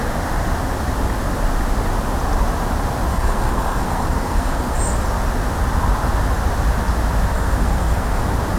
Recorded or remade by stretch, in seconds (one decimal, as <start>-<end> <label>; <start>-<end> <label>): 0.0-3.1 recorded; 3.1-4.8 remade; 4.8-7.3 recorded; 7.3-8.2 remade; 8.2-8.6 recorded

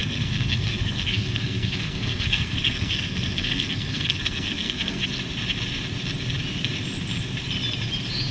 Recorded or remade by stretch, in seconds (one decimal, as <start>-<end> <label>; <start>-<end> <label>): 0.0-5.0 remade; 5.0-8.3 recorded

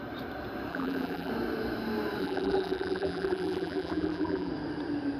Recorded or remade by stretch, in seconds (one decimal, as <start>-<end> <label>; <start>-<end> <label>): 0.0-0.7 recorded; 0.7-1.3 remade; 1.3-2.2 recorded; 2.2-4.5 remade; 4.5-5.2 recorded

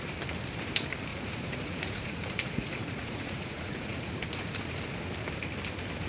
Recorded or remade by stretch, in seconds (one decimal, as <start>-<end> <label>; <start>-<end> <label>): 0.0-1.1 recorded; 1.1-4.8 remade; 4.8-6.1 recorded

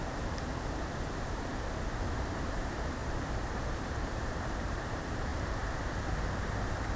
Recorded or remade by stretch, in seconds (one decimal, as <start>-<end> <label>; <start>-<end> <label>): 0.0-1.5 remade; 1.5-2.1 recorded; 2.1-5.3 remade; 5.3-7.0 recorded

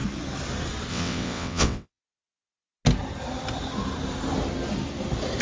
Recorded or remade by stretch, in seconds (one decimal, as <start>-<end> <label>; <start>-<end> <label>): 0.0-0.9 recorded; 0.9-2.0 remade; 2.0-5.4 recorded

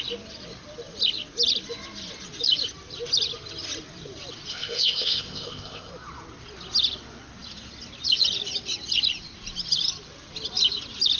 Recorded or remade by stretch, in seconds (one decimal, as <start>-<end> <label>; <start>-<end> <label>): 0.0-4.5 recorded; 4.5-5.9 remade; 5.9-11.2 recorded

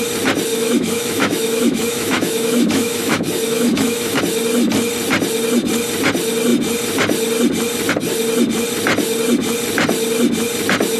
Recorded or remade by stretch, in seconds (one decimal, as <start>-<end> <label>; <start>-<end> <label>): 0.0-0.5 recorded; 0.5-4.2 remade; 4.2-11.0 recorded